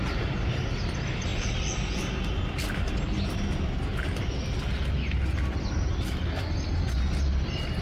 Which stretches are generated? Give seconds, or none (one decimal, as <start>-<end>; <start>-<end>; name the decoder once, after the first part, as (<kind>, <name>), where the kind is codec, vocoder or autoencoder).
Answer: none